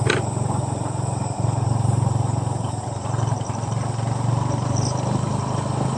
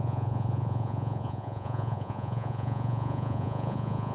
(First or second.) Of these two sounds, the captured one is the first